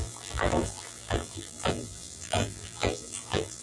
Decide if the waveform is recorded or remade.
remade